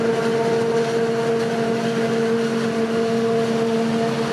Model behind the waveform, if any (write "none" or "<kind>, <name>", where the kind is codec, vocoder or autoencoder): none